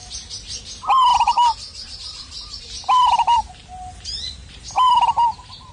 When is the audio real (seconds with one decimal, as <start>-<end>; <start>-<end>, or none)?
0.0-1.1; 3.5-4.4